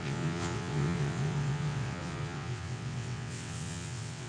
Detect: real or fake fake